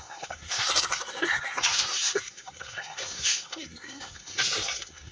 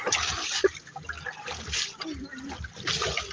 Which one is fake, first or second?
first